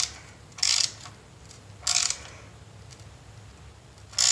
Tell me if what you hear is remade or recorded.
recorded